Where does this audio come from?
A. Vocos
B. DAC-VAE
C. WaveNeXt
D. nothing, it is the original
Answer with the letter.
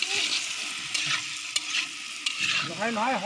D